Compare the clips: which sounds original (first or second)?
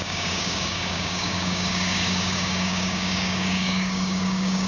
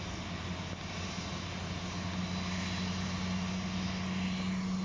second